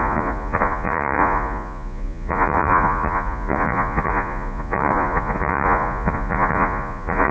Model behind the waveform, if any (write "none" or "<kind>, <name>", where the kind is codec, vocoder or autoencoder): vocoder, Vocos